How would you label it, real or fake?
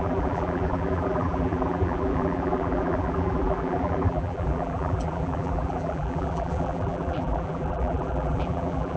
fake